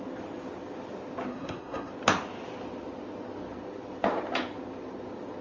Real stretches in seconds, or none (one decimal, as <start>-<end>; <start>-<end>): 0.0-1.3; 1.9-5.4